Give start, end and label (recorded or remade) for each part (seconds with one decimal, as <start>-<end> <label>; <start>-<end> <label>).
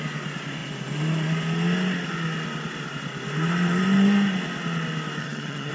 0.0-5.2 recorded; 5.2-5.7 remade